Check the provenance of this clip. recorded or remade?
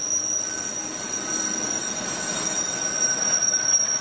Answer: recorded